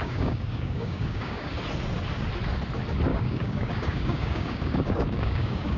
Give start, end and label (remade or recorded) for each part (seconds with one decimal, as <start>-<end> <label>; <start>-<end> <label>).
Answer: 0.0-1.5 remade; 1.5-3.1 recorded; 3.1-5.8 remade